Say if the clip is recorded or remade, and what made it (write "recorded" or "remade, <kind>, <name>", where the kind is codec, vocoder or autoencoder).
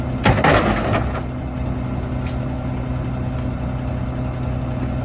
recorded